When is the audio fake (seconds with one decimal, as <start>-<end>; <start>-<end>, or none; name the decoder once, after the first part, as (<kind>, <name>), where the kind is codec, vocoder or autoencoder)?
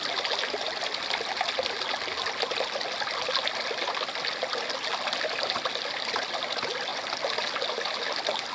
none